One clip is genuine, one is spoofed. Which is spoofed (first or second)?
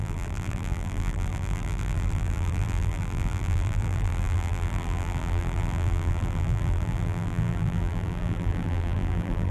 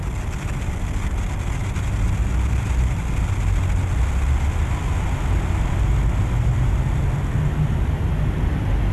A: first